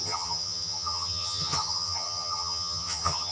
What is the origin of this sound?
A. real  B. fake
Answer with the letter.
B